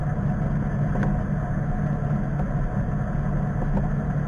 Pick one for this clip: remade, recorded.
recorded